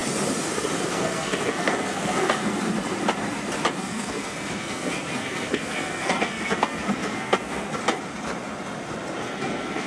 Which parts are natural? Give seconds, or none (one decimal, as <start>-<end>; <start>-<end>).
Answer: 0.0-0.9; 2.6-3.7; 7.8-9.2